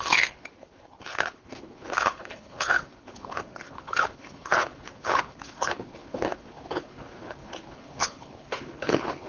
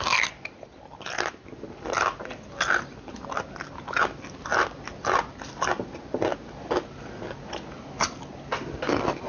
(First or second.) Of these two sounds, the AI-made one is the first